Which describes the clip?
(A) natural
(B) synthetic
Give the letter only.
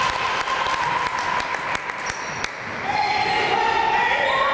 A